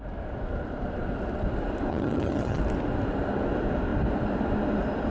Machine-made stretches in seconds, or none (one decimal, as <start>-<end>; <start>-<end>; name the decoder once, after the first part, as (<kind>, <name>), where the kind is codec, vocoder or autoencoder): 1.9-2.6 (vocoder, HiFi-GAN)